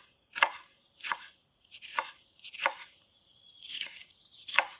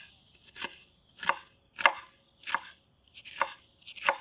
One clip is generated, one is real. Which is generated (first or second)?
first